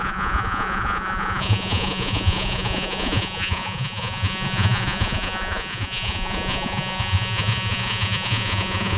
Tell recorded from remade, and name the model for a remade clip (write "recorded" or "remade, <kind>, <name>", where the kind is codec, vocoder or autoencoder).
remade, vocoder, Vocos